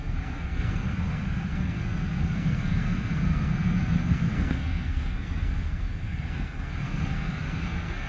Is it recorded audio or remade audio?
remade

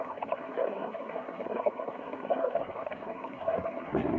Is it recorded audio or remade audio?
remade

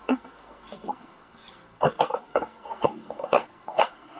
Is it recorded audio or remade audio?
remade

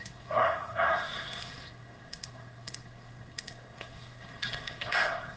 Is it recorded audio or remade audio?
remade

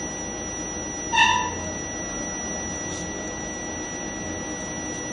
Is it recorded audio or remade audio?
recorded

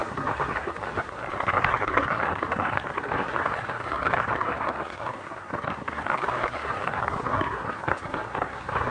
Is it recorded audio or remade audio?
remade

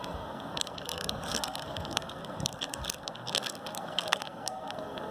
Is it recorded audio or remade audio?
remade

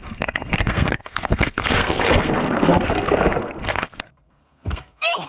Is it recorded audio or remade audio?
remade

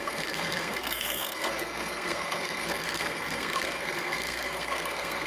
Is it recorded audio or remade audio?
remade